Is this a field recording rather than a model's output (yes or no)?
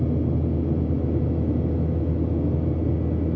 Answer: yes